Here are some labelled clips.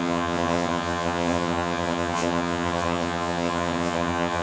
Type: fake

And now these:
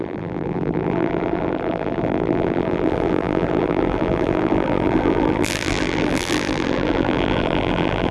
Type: fake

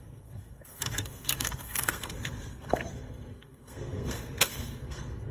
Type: fake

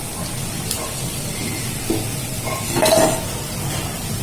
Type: real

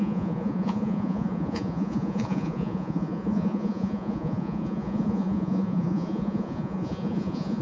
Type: fake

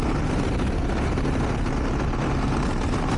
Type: real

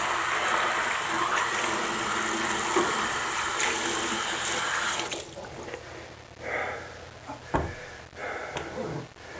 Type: real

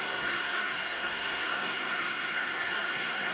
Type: fake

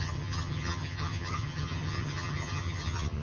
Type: fake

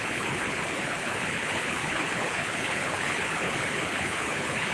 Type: fake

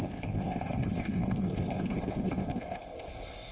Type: fake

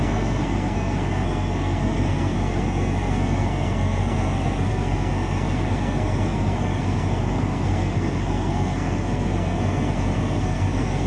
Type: fake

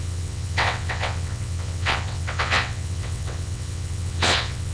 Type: fake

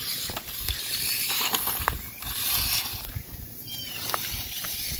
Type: fake